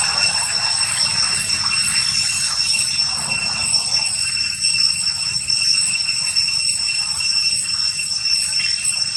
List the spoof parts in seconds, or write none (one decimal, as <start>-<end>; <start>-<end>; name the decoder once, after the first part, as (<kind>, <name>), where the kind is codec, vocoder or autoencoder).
3.6-6.0 (vocoder, Vocos)